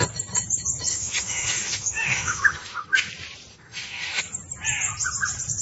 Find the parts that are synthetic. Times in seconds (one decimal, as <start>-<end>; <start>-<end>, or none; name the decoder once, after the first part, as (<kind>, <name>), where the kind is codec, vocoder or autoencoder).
0.9-3.1 (autoencoder, DAC-VAE); 3.5-4.2